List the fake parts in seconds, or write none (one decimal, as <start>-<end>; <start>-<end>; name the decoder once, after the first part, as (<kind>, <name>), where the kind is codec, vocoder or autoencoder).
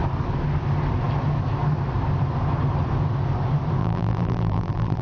3.8-5.0 (vocoder, BigVGAN v2)